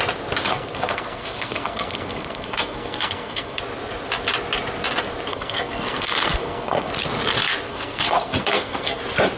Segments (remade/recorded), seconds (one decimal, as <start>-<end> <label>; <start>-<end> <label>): 0.0-0.4 recorded; 0.4-3.6 remade; 3.6-5.3 recorded; 5.3-6.9 remade; 6.9-7.7 recorded; 7.7-9.0 remade; 9.0-9.4 recorded